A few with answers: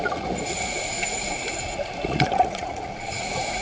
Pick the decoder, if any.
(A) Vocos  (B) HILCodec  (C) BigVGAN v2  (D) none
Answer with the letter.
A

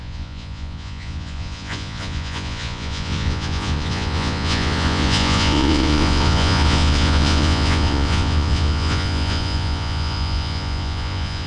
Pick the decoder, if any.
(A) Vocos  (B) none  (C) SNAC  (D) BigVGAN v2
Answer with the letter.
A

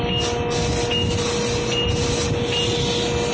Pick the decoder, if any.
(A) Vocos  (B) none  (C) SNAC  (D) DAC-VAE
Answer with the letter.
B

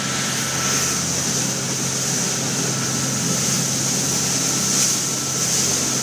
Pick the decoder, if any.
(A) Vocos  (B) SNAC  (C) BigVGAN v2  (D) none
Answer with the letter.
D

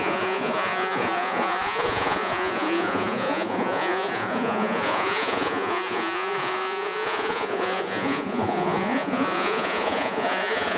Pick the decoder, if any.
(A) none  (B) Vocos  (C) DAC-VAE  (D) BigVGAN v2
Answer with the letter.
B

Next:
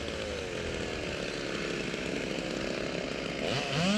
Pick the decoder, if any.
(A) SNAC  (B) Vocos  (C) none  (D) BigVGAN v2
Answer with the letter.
C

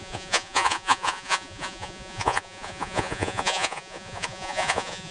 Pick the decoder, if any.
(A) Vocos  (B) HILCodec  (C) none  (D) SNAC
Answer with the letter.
A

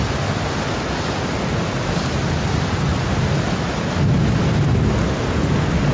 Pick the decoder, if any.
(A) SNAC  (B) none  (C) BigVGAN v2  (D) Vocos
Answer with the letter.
B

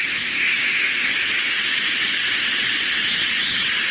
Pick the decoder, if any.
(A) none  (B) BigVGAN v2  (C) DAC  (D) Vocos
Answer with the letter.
A